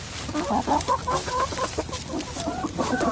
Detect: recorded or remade recorded